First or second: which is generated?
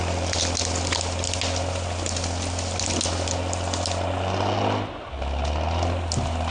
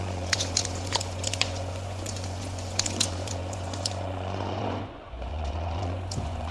second